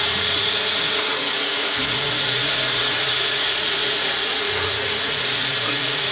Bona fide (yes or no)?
no